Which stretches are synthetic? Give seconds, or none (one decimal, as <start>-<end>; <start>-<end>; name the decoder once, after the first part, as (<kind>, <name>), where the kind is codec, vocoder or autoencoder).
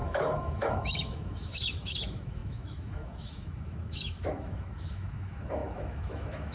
0.0-6.5 (autoencoder, DAC-VAE)